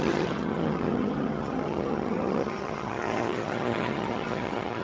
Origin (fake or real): fake